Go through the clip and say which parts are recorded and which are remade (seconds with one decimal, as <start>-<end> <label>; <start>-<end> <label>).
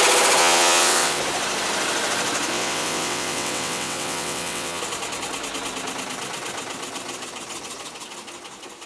0.0-0.4 recorded; 0.4-1.2 remade; 1.2-2.5 recorded; 2.5-4.8 remade; 4.8-8.9 recorded